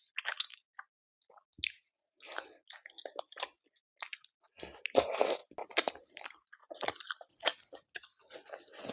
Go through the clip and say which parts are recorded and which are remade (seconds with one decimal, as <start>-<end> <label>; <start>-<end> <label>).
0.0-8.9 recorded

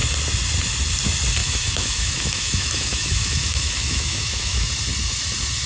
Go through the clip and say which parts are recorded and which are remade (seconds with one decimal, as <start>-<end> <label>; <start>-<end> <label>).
0.0-1.4 recorded; 1.4-4.7 remade; 4.7-5.7 recorded

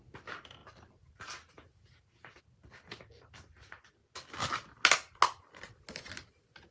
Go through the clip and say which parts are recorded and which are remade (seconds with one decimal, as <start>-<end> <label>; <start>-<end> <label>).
0.0-6.7 recorded